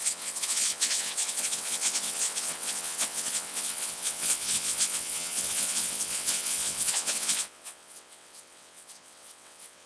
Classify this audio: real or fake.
fake